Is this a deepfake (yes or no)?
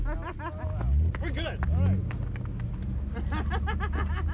no